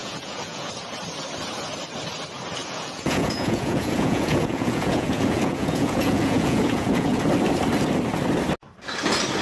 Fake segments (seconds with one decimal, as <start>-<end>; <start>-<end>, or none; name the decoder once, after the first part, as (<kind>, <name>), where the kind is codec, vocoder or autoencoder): 0.0-0.7 (vocoder, Vocos); 2.6-7.2